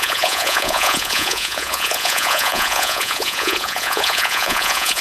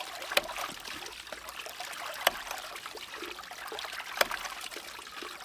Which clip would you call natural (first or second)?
second